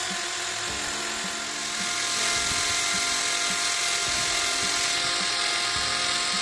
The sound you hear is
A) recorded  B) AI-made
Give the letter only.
A